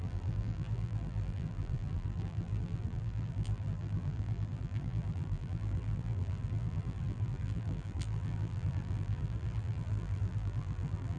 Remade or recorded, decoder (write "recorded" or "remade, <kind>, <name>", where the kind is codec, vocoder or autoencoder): remade, vocoder, BigVGAN v2